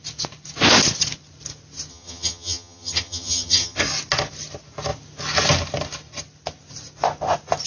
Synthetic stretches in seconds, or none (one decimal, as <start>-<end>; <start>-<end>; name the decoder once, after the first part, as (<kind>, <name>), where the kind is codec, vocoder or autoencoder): 1.9-3.8 (vocoder, HiFi-GAN)